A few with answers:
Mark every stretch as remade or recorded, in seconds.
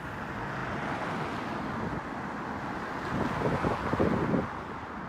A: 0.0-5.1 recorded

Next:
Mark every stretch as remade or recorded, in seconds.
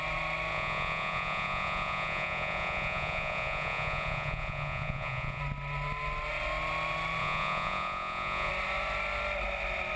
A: 0.0-0.5 recorded; 0.5-5.4 remade; 5.4-7.2 recorded; 7.2-8.5 remade; 8.5-10.0 recorded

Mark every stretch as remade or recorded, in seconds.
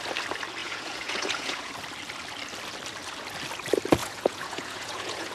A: 0.0-0.6 recorded; 0.6-1.7 remade; 1.7-4.0 recorded; 4.0-5.3 remade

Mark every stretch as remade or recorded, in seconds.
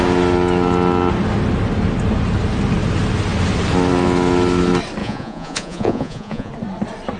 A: 0.0-5.0 recorded; 5.0-6.5 remade; 6.5-7.2 recorded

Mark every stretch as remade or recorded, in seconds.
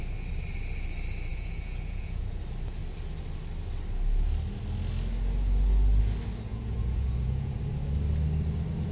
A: 0.0-1.3 recorded; 1.3-2.4 remade; 2.4-6.5 recorded; 6.5-7.6 remade; 7.6-8.9 recorded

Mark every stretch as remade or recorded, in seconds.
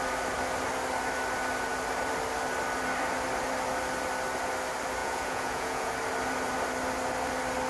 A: 0.0-5.0 recorded; 5.0-5.9 remade; 5.9-7.7 recorded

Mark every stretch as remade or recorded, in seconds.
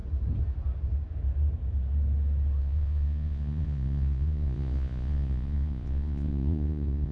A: 0.0-2.6 recorded; 2.6-7.1 remade